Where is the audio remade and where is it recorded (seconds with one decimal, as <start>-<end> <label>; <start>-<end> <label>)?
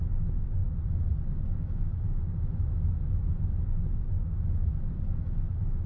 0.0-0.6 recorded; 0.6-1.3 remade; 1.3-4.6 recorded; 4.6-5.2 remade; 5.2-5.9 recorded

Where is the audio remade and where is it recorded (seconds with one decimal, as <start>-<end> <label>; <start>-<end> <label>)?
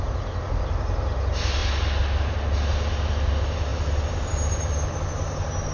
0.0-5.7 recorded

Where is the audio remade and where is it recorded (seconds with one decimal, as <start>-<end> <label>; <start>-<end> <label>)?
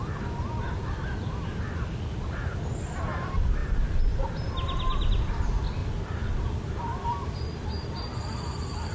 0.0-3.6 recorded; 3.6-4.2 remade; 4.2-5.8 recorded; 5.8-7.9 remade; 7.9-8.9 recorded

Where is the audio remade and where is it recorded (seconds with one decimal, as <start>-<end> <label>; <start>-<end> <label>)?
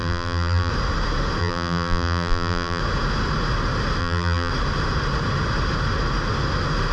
0.0-0.7 remade; 0.7-1.4 recorded; 1.4-2.8 remade; 2.8-4.0 recorded; 4.0-4.5 remade; 4.5-6.9 recorded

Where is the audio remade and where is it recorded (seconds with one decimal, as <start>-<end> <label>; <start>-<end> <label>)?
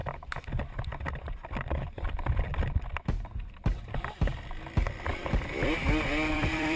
0.0-1.2 recorded; 1.2-2.5 remade; 2.5-3.0 recorded; 3.0-5.1 remade; 5.1-6.3 recorded; 6.3-6.8 remade